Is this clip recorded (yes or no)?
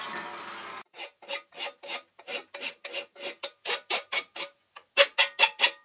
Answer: yes